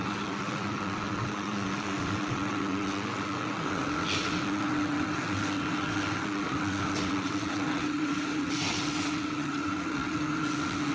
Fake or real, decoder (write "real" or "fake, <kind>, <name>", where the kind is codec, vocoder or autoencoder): fake, vocoder, WaveNeXt